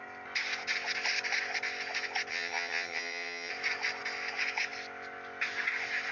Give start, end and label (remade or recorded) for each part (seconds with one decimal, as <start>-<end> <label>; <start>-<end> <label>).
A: 0.0-2.3 recorded; 2.3-3.5 remade; 3.5-6.1 recorded